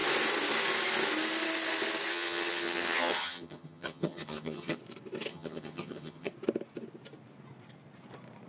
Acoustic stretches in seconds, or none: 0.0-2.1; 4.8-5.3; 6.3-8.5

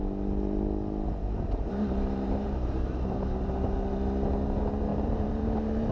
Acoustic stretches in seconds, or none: 0.0-1.2; 3.5-4.9

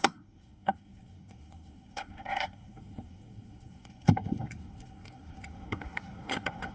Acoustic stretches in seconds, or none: none